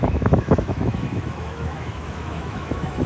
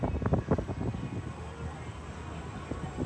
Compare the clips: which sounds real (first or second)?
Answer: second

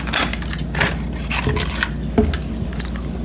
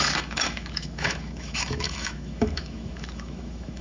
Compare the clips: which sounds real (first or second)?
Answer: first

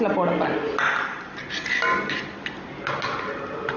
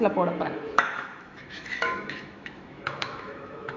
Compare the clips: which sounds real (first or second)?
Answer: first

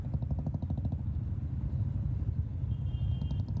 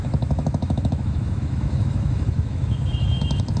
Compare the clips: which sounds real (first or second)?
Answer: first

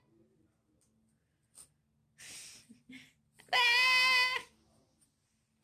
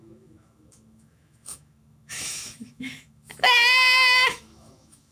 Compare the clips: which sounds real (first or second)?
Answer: first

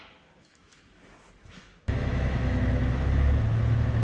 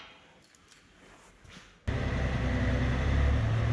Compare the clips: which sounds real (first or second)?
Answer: second